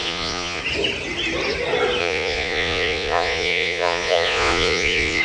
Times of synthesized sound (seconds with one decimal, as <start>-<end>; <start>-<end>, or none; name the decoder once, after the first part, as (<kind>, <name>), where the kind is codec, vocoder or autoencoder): 0.0-0.6 (vocoder, Vocos); 2.0-5.2